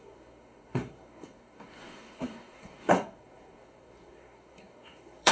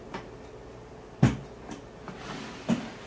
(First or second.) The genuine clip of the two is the second